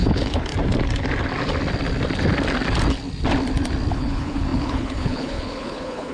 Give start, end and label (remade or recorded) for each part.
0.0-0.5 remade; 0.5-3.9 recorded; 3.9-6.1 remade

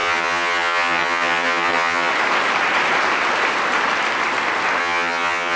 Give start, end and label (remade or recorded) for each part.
0.0-2.1 remade; 2.1-4.8 recorded; 4.8-5.6 remade

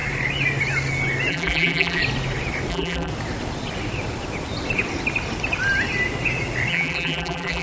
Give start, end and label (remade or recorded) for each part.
0.0-1.3 recorded; 1.3-2.0 remade; 2.0-2.7 recorded; 2.7-3.1 remade; 3.1-6.7 recorded; 6.7-7.6 remade